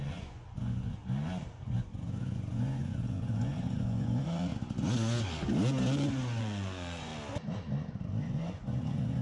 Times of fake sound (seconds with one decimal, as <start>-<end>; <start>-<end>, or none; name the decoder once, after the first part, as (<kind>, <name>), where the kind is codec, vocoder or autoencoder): 0.0-1.0 (vocoder, Vocos); 1.5-4.5; 6.4-7.1; 8.2-9.2